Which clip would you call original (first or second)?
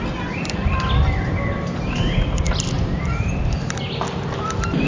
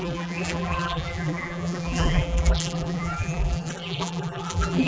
first